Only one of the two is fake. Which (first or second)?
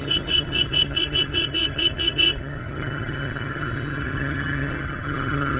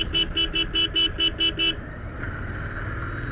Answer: first